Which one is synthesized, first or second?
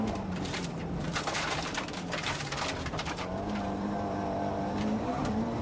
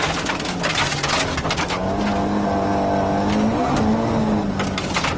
first